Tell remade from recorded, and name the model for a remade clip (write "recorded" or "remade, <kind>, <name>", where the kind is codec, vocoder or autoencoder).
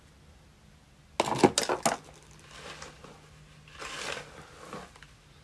recorded